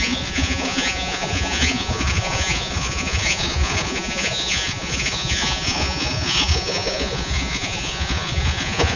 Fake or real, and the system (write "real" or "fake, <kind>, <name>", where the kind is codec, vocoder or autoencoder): fake, vocoder, Vocos